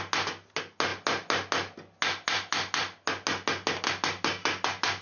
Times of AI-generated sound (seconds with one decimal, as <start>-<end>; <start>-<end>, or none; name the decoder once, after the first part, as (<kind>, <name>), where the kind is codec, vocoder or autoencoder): none